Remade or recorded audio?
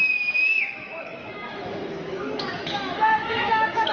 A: remade